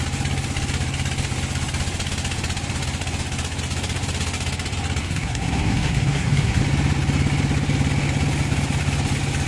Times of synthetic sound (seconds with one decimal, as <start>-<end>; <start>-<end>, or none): 5.0-6.6